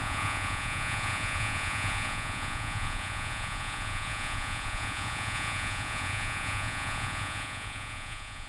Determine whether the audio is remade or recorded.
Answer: remade